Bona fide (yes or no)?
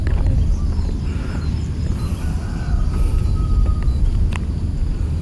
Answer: yes